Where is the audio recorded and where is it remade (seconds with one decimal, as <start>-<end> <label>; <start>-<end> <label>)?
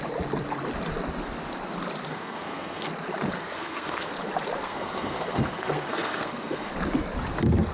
0.0-2.1 recorded; 2.1-2.9 remade; 2.9-3.4 recorded; 3.4-4.1 remade; 4.1-4.6 recorded; 4.6-6.7 remade; 6.7-7.7 recorded